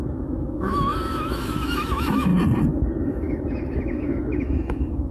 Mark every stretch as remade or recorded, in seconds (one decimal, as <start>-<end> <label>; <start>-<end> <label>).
0.0-2.3 remade; 2.3-3.0 recorded; 3.0-5.1 remade